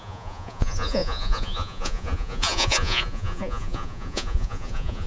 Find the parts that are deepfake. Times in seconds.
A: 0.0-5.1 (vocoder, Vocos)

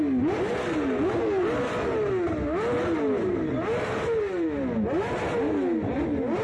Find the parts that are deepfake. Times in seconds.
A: none

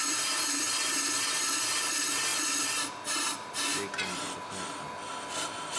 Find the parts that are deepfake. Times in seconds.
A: none